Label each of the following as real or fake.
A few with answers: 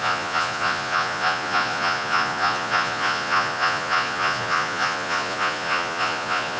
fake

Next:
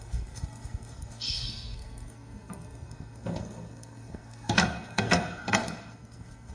fake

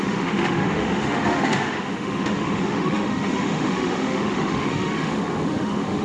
fake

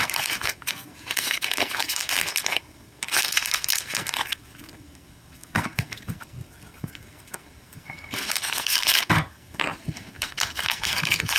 fake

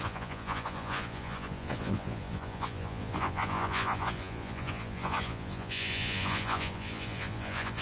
fake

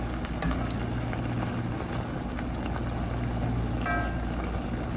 real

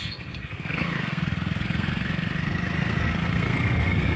fake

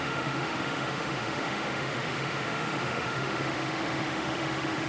fake